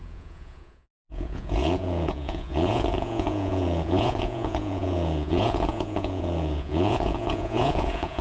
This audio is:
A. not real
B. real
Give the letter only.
A